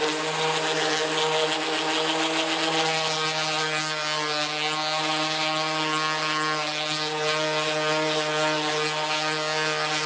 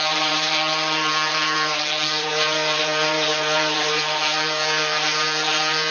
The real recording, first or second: first